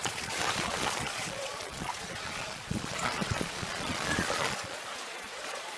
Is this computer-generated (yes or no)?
yes